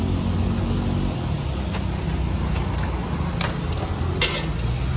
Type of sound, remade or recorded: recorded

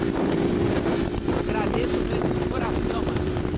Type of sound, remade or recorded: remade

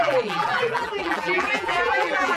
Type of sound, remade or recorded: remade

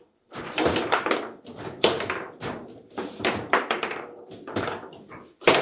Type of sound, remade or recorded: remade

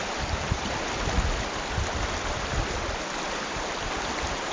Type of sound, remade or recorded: remade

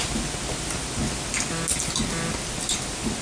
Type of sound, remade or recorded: recorded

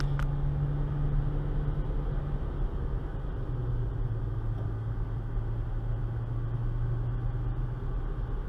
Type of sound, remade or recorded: recorded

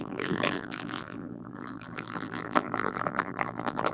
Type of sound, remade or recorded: remade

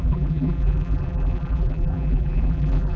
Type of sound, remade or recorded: remade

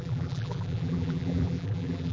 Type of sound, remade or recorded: remade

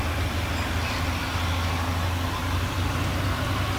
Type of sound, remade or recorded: recorded